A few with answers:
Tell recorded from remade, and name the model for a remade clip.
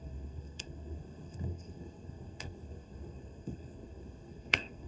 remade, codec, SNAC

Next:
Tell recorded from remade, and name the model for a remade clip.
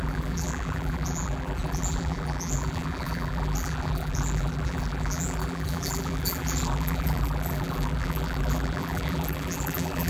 remade, vocoder, BigVGAN v2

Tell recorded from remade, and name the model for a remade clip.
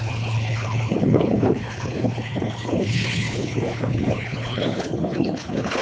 remade, codec, HILCodec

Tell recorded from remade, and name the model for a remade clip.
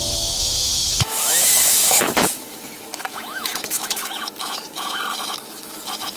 remade, autoencoder, DAC-VAE